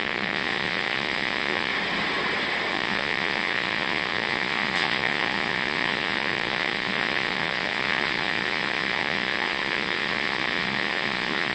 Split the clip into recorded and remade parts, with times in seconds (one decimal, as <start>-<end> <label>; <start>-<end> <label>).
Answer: 0.0-1.7 remade; 1.7-2.7 recorded; 2.7-11.5 remade